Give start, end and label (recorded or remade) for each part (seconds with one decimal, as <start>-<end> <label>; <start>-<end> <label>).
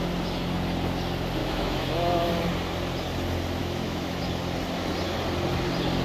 0.0-1.4 recorded; 1.4-2.3 remade; 2.3-3.6 recorded; 3.6-4.2 remade; 4.2-6.0 recorded